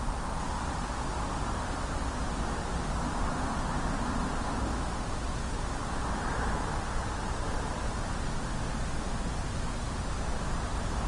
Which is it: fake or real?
real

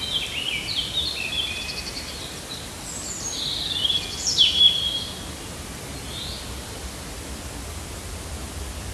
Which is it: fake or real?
real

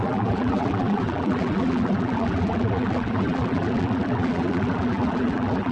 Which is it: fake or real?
fake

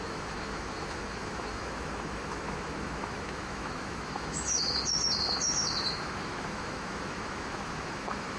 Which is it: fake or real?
fake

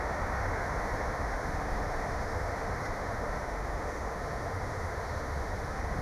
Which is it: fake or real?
fake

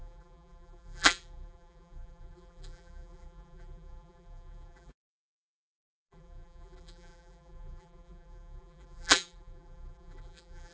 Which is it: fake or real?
fake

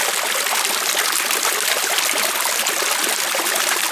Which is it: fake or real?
real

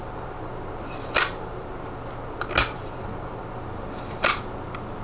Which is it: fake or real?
real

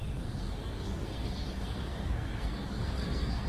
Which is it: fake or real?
fake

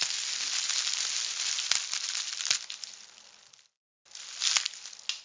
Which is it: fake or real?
real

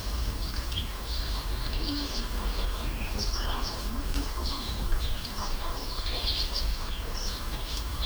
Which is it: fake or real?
fake